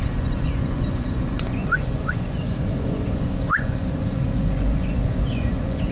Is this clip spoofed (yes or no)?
yes